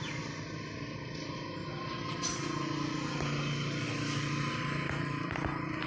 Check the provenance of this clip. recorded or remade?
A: recorded